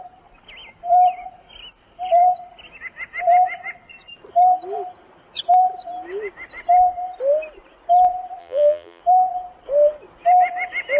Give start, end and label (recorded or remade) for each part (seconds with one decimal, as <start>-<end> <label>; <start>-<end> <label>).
0.0-8.4 recorded; 8.4-9.0 remade; 9.0-11.0 recorded